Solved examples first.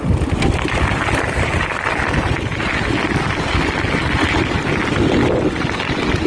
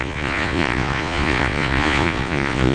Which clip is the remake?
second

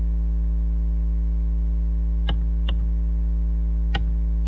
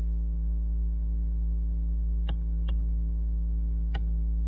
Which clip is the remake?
second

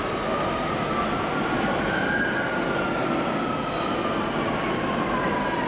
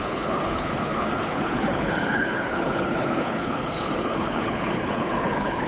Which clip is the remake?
second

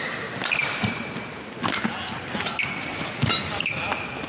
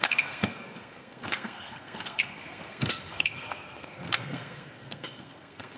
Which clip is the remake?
second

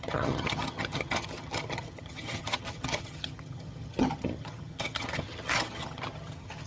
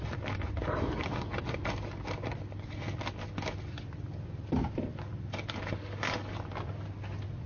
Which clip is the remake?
first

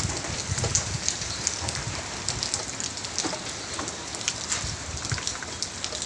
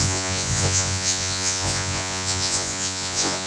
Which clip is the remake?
second